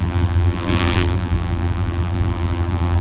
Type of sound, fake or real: fake